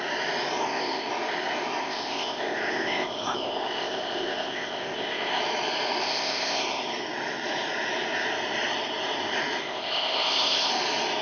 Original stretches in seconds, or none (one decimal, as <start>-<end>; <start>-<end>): 0.0-0.6; 1.1-1.8; 5.4-6.0; 6.8-9.6; 10.7-11.2